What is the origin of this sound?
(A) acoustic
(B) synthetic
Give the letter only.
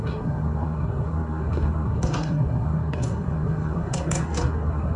B